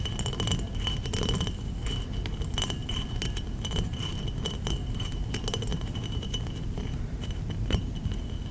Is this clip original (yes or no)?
yes